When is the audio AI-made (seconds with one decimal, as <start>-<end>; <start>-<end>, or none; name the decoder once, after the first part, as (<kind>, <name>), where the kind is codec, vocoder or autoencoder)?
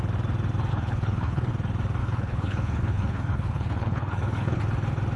0.7-1.5 (codec, HILCodec); 2.0-4.6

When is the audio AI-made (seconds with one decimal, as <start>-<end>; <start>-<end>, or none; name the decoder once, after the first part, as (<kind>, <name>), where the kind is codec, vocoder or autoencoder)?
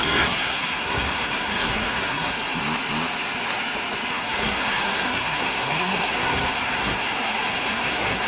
0.0-2.6 (codec, SNAC); 4.1-8.3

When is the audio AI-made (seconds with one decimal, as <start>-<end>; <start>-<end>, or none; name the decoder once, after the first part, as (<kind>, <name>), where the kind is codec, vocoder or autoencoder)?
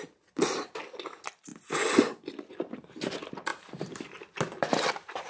none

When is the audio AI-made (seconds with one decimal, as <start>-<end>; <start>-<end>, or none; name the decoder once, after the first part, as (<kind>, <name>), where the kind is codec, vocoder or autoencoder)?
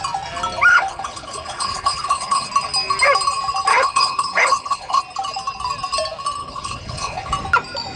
0.7-2.5 (codec, HILCodec); 3.7-5.0; 6.4-7.3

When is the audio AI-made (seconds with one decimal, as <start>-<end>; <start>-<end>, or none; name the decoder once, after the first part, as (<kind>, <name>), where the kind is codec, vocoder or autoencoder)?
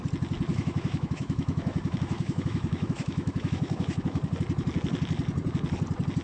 0.5-4.2 (autoencoder, DAC-VAE)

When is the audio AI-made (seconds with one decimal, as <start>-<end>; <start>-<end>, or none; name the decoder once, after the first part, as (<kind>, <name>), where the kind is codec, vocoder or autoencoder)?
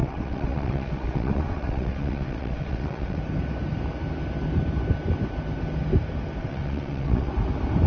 0.0-3.2 (vocoder, WaveNeXt); 6.4-7.3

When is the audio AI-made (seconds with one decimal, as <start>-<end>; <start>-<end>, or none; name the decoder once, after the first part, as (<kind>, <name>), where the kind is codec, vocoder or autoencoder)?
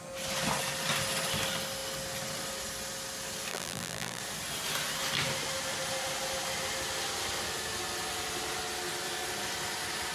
3.5-4.2 (vocoder, BigVGAN v2)